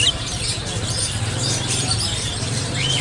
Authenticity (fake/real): fake